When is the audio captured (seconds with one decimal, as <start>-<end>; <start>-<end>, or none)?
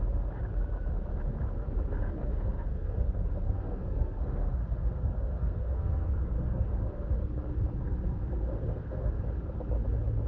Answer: 0.0-2.3; 6.9-8.6; 9.2-10.3